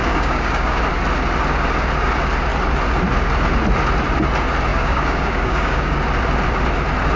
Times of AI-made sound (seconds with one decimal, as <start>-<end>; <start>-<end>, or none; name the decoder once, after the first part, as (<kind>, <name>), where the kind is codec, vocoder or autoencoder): 0.0-0.8 (codec, DAC); 4.7-6.0